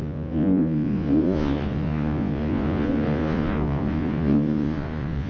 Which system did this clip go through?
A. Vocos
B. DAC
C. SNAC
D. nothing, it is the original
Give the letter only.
A